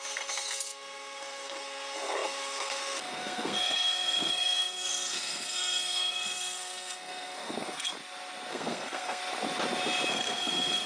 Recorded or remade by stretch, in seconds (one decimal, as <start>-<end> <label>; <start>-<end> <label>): 0.0-7.9 remade; 7.9-8.5 recorded; 8.5-9.2 remade; 9.2-10.1 recorded; 10.1-10.9 remade